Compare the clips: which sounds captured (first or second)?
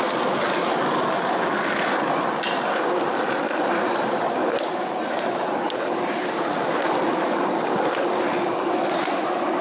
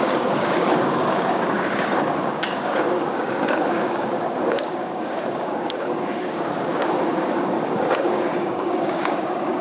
first